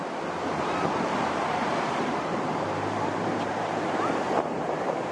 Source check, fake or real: fake